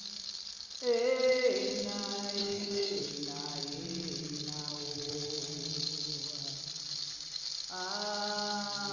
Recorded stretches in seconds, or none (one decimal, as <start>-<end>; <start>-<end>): 0.0-2.4; 3.1-8.9